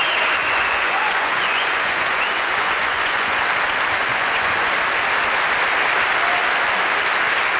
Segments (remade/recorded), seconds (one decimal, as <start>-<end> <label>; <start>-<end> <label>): 0.0-0.4 recorded; 0.4-3.4 remade; 3.4-4.1 recorded; 4.1-4.7 remade; 4.7-7.6 recorded